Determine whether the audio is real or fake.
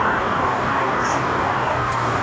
fake